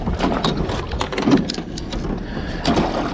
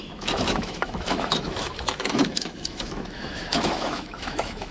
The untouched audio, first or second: first